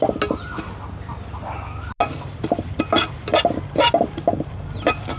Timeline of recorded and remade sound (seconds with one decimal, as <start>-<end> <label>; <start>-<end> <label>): 0.0-5.2 recorded